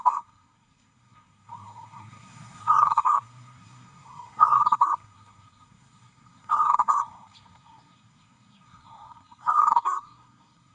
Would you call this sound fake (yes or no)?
yes